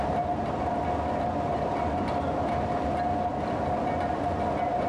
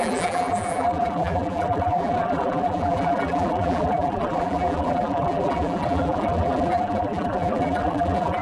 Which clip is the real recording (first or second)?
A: first